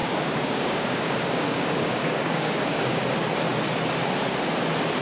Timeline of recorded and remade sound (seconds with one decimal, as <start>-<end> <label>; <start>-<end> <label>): 0.0-3.0 remade; 3.0-5.0 recorded